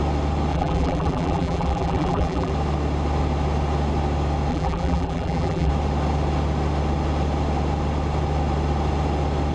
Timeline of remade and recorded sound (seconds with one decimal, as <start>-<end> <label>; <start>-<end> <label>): 0.0-0.5 recorded; 0.5-2.5 remade; 2.5-4.5 recorded; 4.5-5.7 remade; 5.7-9.5 recorded

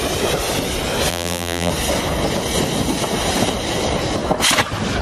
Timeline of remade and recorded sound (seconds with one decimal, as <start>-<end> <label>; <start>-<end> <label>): 0.0-1.1 recorded; 1.1-1.7 remade; 1.7-5.0 recorded

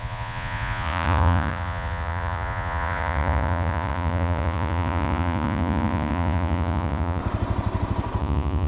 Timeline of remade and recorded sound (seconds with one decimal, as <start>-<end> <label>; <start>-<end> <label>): 0.0-7.2 remade; 7.2-8.2 recorded; 8.2-8.7 remade

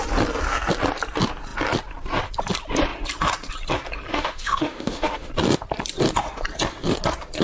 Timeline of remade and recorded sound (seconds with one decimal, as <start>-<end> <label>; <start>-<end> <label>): 0.0-4.1 recorded; 4.1-5.3 remade; 5.3-7.4 recorded

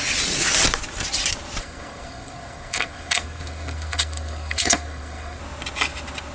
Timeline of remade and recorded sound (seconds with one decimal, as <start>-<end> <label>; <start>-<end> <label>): 0.0-1.6 recorded; 1.6-5.4 remade; 5.4-6.3 recorded

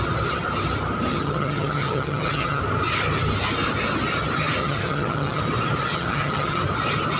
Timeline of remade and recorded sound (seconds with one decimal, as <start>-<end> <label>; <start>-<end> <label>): 0.0-1.1 recorded; 1.1-2.6 remade; 2.6-4.6 recorded; 4.6-5.4 remade; 5.4-5.9 recorded; 5.9-6.6 remade; 6.6-7.2 recorded

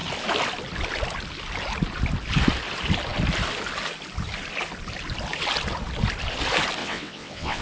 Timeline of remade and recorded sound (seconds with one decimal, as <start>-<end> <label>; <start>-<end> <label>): 0.0-6.8 recorded; 6.8-7.6 remade